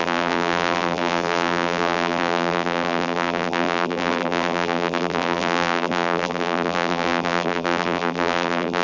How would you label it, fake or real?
fake